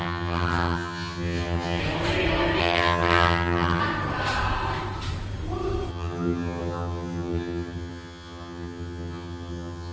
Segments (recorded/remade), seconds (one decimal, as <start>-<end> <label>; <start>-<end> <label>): 0.0-1.8 remade; 1.8-2.6 recorded; 2.6-3.8 remade; 3.8-5.9 recorded; 5.9-9.9 remade

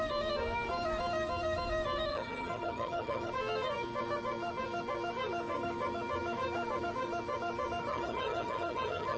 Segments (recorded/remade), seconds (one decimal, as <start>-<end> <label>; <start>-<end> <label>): 0.0-2.1 recorded; 2.1-3.3 remade; 3.3-7.9 recorded; 7.9-9.2 remade

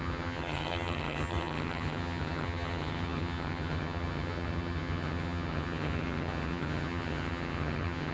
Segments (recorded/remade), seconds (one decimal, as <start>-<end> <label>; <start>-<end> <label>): 0.0-8.1 remade

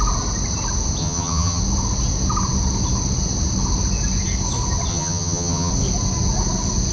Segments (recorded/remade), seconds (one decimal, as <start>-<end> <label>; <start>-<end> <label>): 0.0-1.0 recorded; 1.0-1.6 remade; 1.6-4.9 recorded; 4.9-5.7 remade; 5.7-6.9 recorded

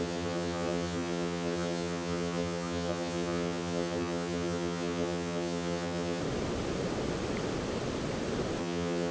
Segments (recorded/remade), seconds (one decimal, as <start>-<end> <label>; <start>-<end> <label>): 0.0-6.2 remade; 6.2-8.6 recorded; 8.6-9.1 remade

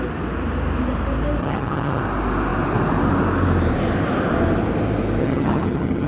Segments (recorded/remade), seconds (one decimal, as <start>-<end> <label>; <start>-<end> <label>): 0.0-1.4 recorded; 1.4-2.0 remade; 2.0-5.2 recorded; 5.2-6.1 remade